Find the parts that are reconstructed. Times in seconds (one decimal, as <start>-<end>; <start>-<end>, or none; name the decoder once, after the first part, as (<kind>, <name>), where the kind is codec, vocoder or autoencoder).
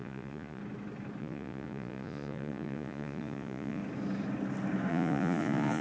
0.0-0.6 (vocoder, Vocos); 1.2-3.8; 4.9-5.8